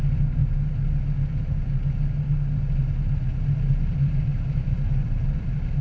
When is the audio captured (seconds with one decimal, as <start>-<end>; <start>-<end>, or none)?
0.4-3.9